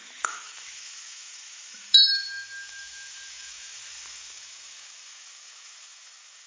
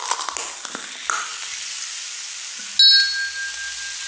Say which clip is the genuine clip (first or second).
second